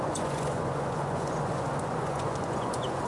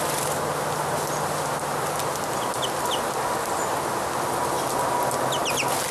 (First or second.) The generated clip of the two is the first